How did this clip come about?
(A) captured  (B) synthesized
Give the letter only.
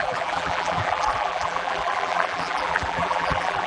B